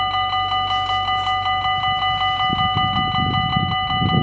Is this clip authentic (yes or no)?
yes